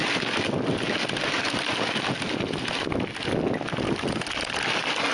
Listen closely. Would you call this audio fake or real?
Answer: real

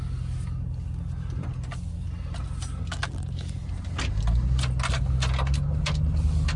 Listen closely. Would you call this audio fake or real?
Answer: real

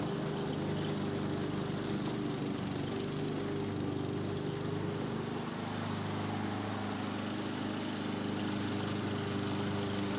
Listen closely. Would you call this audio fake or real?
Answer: real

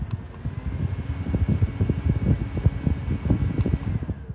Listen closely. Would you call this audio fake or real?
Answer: real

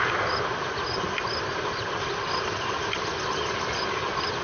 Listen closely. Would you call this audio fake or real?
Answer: real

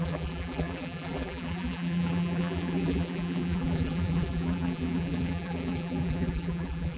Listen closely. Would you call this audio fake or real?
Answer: fake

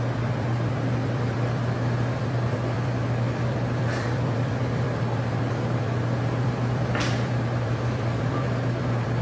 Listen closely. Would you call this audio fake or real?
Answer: fake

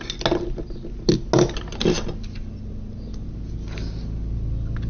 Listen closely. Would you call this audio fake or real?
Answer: real